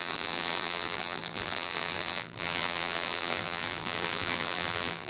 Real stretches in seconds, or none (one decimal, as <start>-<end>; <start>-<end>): none